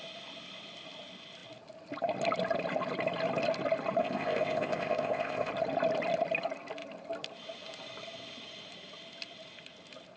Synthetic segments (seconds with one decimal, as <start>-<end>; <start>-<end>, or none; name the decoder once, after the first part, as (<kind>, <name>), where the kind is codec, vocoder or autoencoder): 4.0-5.5 (codec, ZipCodec)